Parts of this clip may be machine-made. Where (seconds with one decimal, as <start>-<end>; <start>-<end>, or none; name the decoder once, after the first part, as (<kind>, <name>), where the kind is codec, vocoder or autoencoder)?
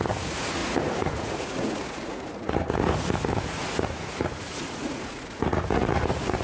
0.0-6.4 (vocoder, Vocos)